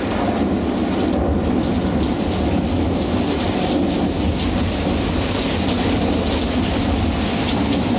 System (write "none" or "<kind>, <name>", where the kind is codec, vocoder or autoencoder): none